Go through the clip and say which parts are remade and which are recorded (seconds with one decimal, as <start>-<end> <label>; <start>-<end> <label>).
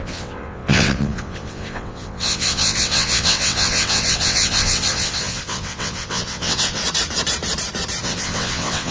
0.0-6.8 remade; 6.8-8.0 recorded; 8.0-8.9 remade